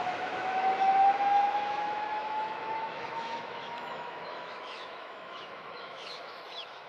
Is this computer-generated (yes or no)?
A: yes